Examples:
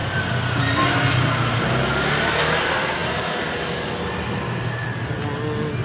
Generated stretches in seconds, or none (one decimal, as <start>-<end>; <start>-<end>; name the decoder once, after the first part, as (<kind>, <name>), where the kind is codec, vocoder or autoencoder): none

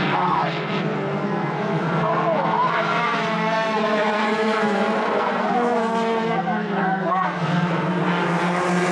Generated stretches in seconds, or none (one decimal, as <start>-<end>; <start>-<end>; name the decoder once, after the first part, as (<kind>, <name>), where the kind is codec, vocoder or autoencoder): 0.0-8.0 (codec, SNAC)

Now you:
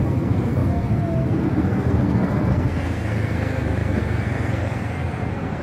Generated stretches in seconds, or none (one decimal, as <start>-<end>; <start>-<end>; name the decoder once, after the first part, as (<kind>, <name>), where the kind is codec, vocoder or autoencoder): 0.0-5.6 (codec, SNAC)